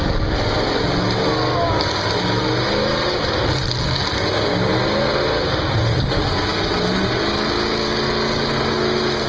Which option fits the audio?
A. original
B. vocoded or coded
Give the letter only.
A